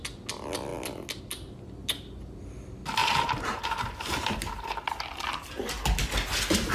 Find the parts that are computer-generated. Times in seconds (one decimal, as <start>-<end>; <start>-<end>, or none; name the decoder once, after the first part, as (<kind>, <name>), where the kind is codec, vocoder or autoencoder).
3.0-4.1 (vocoder, BigVGAN v2)